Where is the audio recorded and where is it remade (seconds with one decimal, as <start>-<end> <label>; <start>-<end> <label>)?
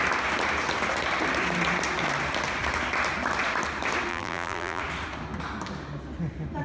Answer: 0.0-4.1 recorded; 4.1-4.8 remade; 4.8-6.6 recorded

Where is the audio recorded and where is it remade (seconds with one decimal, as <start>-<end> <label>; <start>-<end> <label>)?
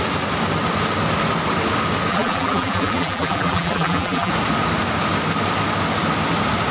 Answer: 0.0-2.1 recorded; 2.1-4.3 remade; 4.3-6.7 recorded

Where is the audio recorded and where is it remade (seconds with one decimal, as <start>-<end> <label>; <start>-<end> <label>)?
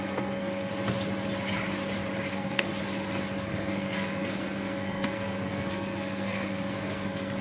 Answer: 0.0-0.7 remade; 0.7-2.3 recorded; 2.3-2.7 remade; 2.7-3.4 recorded; 3.4-7.4 remade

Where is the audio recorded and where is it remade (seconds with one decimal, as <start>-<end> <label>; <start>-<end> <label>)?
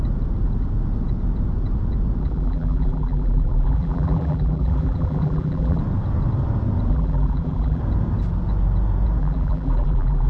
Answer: 0.0-2.2 recorded; 2.2-5.8 remade; 5.8-6.9 recorded; 6.9-7.8 remade; 7.8-9.2 recorded; 9.2-10.3 remade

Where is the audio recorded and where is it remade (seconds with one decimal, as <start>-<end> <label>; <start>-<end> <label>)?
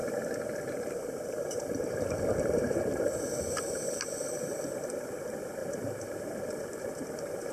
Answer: 0.0-4.4 remade; 4.4-5.6 recorded; 5.6-7.5 remade